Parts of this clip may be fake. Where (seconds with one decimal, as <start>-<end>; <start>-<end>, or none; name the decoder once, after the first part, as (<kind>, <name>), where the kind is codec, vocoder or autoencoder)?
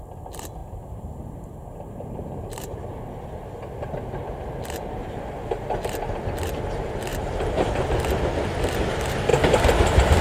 0.6-2.9 (vocoder, BigVGAN v2); 5.0-5.7; 7.1-7.8